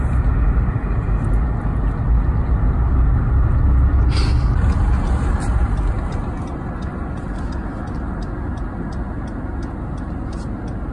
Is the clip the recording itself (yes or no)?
yes